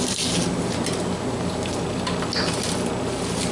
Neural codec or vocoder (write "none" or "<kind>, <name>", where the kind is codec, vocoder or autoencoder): none